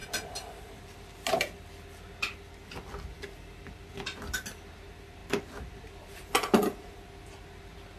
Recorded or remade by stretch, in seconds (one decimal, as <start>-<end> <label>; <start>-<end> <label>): 0.0-8.0 recorded